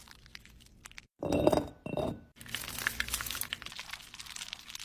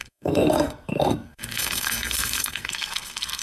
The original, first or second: first